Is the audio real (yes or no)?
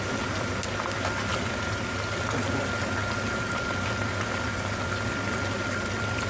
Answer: yes